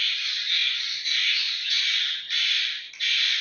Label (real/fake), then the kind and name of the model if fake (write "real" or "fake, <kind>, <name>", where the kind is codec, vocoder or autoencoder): real